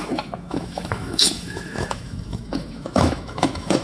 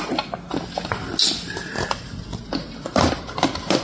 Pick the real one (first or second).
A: second